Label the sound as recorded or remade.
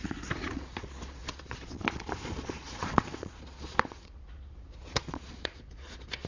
remade